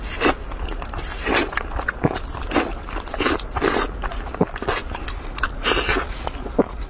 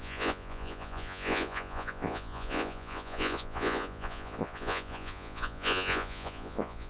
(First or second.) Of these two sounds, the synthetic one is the second